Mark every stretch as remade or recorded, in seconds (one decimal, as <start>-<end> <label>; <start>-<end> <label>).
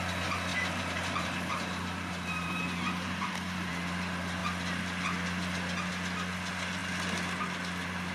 0.0-0.5 recorded; 0.5-3.7 remade; 3.7-8.1 recorded